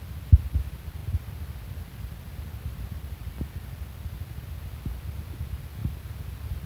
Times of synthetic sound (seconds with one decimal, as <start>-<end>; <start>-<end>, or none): none